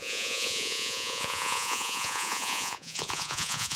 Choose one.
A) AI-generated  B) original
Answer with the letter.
A